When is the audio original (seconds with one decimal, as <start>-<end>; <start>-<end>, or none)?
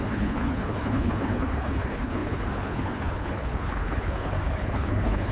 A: none